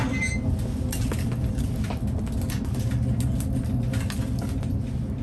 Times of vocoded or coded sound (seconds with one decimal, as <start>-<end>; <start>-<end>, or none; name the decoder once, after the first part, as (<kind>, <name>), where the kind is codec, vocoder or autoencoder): none